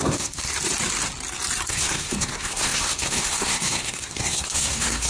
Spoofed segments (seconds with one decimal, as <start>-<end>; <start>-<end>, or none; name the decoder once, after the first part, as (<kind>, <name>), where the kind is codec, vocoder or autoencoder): 0.0-0.5 (codec, SNAC); 1.7-5.1